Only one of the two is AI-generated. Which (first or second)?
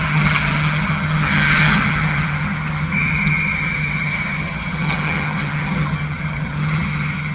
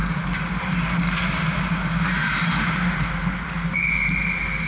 first